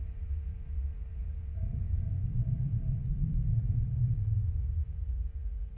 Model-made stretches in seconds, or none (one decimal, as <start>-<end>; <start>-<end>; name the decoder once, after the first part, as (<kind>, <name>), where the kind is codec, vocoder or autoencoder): 1.2-3.0 (vocoder, BigVGAN v2); 3.5-4.1